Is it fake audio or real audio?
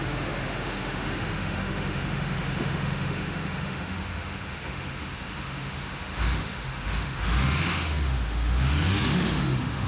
fake